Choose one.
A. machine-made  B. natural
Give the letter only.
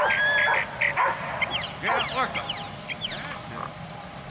B